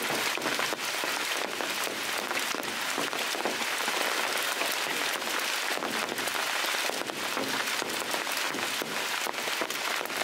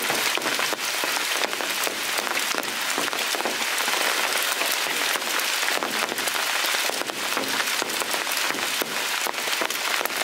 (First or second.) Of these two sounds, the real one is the second